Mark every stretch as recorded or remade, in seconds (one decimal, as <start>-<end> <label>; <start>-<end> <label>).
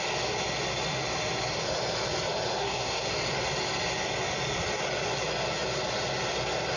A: 0.0-2.6 recorded; 2.6-3.1 remade; 3.1-6.8 recorded